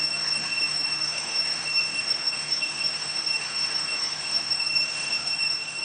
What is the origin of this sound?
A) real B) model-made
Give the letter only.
B